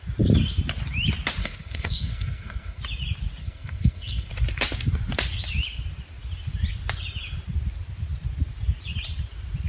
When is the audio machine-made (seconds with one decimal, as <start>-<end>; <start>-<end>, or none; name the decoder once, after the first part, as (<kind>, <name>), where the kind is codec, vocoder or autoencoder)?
1.4-2.8 (codec, SNAC); 3.4-4.3